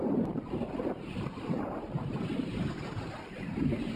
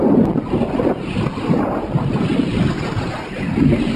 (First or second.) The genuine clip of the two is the second